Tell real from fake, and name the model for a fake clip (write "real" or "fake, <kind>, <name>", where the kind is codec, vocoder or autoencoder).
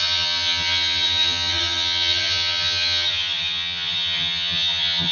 fake, vocoder, HiFi-GAN